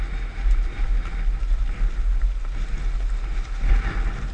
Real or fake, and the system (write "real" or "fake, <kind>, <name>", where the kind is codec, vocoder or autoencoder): real